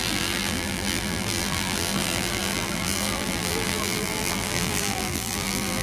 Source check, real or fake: fake